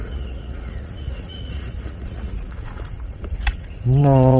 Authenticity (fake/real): fake